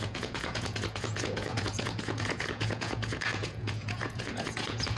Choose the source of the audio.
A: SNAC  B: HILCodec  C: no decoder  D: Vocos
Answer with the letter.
D